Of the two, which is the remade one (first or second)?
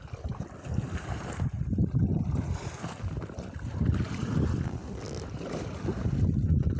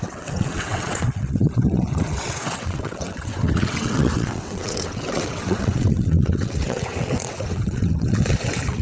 second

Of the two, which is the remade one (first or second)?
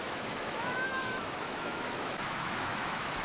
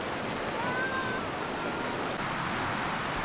first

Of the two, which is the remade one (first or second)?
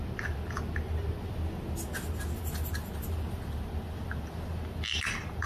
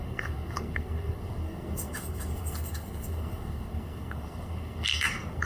second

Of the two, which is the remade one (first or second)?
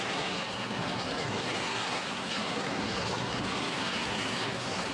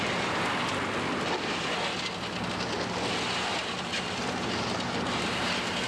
first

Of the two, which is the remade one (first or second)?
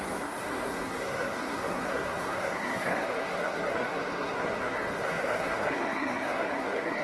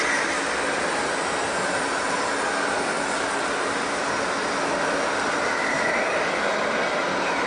first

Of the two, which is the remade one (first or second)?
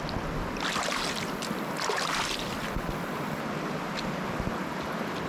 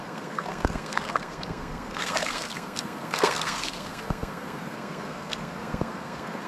second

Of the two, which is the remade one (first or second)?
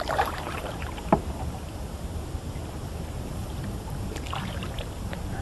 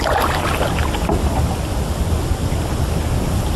first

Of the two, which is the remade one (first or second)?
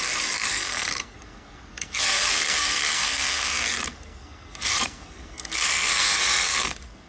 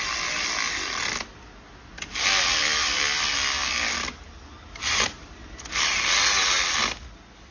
first